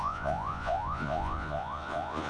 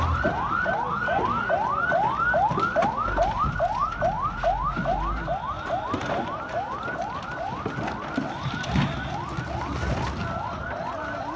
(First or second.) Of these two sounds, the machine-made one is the first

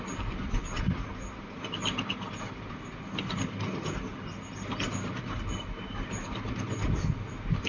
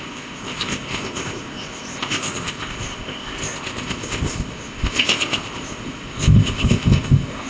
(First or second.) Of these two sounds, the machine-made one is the second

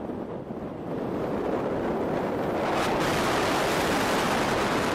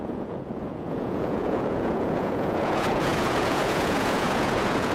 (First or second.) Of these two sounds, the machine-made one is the second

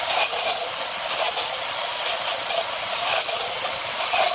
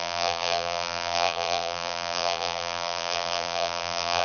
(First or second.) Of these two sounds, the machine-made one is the second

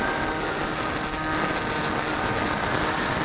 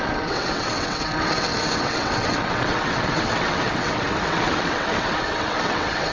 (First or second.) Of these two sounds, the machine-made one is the second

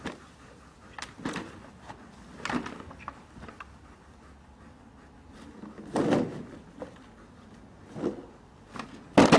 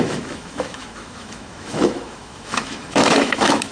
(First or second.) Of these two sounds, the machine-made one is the second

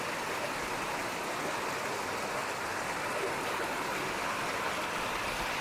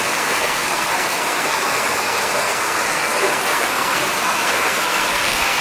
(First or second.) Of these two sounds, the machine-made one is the second